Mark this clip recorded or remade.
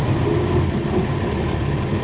recorded